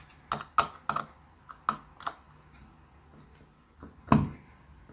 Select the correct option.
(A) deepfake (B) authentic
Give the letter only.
B